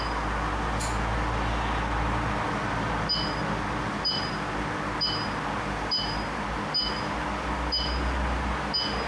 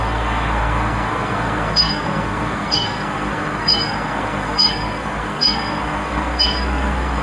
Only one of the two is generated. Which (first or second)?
second